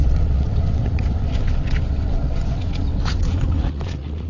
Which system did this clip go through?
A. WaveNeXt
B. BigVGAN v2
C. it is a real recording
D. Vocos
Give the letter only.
A